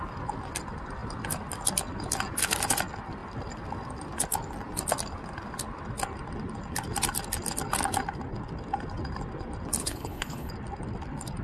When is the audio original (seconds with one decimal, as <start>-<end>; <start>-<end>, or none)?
0.0-9.8; 10.5-11.4